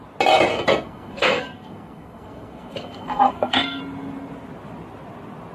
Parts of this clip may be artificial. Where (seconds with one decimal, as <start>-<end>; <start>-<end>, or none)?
0.5-3.8